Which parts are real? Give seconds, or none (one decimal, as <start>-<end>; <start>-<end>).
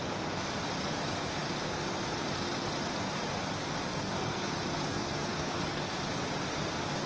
0.0-3.9; 4.5-4.9; 5.9-7.1